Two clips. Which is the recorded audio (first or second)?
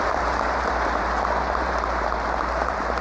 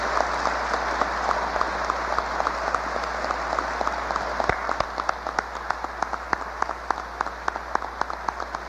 second